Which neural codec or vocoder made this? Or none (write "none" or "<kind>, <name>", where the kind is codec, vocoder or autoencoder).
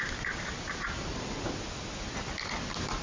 none